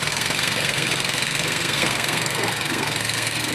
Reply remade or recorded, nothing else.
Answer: remade